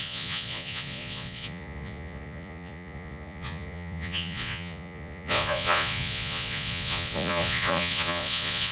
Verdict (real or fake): fake